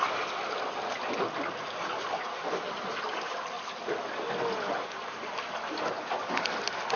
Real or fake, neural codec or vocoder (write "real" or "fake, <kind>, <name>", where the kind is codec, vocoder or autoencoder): real